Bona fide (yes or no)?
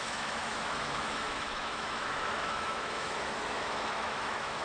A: no